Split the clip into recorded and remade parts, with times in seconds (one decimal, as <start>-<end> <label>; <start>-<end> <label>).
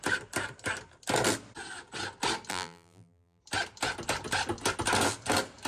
0.0-2.5 recorded; 2.5-3.4 remade; 3.4-5.7 recorded